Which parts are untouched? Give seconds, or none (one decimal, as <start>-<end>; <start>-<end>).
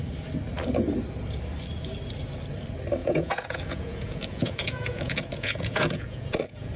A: 0.0-3.0